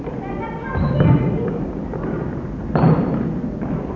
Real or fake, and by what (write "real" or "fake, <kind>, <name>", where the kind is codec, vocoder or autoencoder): real